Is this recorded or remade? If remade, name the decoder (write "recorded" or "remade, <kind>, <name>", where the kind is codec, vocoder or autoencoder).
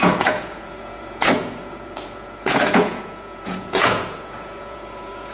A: remade, vocoder, Vocos